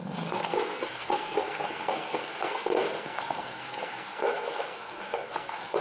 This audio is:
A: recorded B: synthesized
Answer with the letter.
B